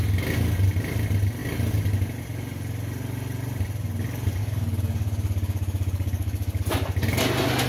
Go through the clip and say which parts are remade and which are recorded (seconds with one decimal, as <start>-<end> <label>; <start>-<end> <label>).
0.0-4.4 recorded; 4.4-6.6 remade; 6.6-7.7 recorded